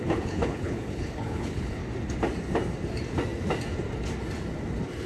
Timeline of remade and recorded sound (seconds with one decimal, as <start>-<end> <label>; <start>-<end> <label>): 0.0-1.8 remade; 1.8-5.1 recorded